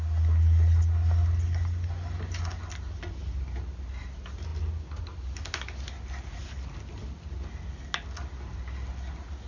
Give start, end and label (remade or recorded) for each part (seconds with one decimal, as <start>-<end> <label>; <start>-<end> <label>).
0.0-9.5 recorded